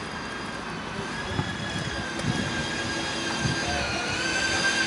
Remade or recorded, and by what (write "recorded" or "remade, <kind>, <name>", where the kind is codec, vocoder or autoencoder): recorded